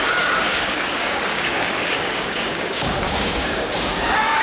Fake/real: fake